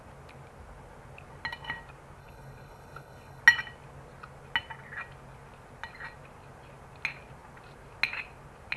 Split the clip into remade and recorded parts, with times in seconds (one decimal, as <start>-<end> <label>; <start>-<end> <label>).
0.0-2.2 recorded; 2.2-3.4 remade; 3.4-8.8 recorded